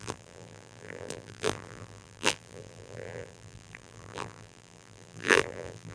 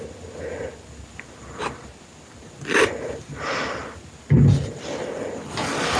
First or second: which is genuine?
second